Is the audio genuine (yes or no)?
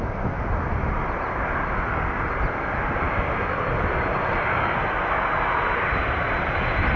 yes